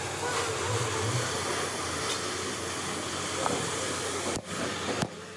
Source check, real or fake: real